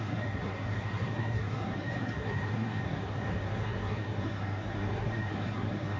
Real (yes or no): no